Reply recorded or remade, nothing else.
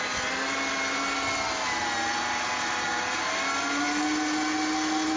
recorded